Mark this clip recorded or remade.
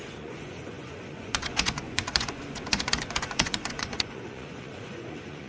remade